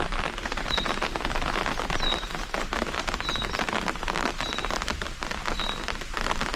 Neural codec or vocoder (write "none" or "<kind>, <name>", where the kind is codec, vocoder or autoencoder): none